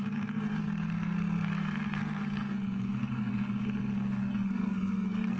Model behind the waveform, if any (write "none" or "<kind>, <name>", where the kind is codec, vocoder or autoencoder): codec, SNAC